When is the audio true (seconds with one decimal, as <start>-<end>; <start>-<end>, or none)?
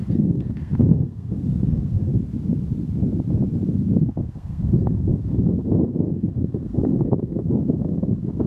2.1-4.0